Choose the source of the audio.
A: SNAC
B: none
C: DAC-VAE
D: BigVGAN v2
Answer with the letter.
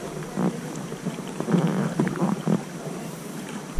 D